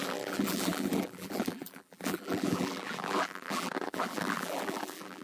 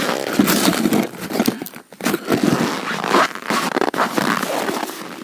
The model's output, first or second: first